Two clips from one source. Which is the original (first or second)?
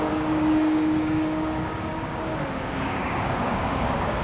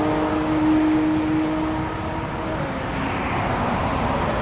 second